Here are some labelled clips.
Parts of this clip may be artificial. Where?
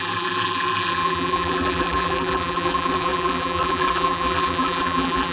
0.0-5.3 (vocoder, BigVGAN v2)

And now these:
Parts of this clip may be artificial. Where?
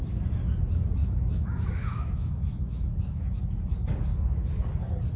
1.0-3.4 (autoencoder, DAC-VAE)